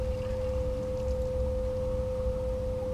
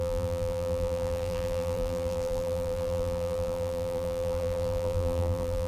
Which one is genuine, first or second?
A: first